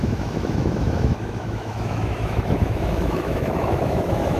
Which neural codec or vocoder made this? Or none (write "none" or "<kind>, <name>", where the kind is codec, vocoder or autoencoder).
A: autoencoder, DAC-VAE